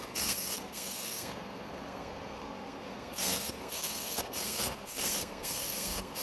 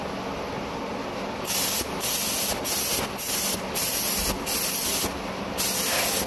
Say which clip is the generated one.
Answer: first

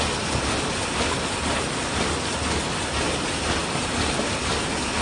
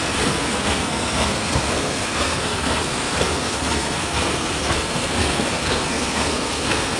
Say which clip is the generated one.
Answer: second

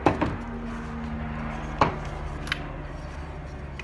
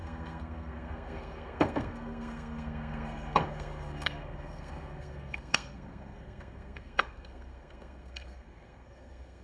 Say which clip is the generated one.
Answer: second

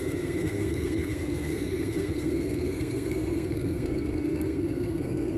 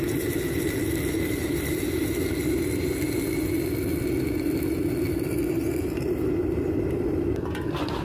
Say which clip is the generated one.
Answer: first